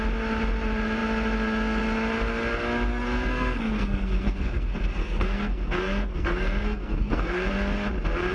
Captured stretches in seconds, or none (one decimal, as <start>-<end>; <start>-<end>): 0.0-2.9; 7.5-8.3